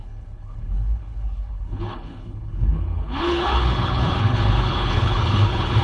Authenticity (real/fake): fake